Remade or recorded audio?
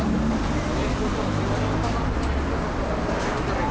recorded